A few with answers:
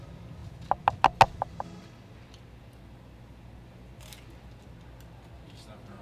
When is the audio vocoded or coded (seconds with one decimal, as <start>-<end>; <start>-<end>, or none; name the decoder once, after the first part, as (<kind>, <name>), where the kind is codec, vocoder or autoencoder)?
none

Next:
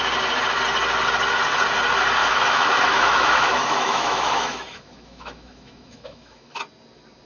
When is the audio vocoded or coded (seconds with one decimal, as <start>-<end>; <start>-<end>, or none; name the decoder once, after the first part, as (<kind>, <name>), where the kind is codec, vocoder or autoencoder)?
2.2-6.6 (autoencoder, DAC-VAE)

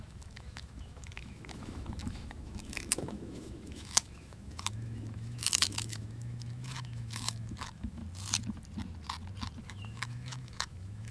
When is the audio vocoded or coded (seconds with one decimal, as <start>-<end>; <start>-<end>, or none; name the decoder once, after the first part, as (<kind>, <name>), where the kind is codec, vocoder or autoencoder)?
0.0-8.0 (autoencoder, DAC-VAE); 9.6-11.1